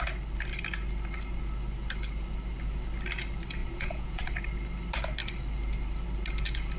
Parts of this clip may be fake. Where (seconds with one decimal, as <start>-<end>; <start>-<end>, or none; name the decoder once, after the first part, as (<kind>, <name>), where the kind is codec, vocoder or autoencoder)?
3.6-4.2 (vocoder, Vocos)